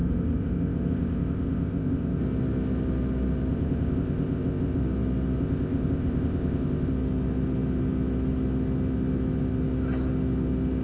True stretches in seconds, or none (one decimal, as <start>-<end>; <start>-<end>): 2.2-3.5; 4.8-5.4; 6.9-10.8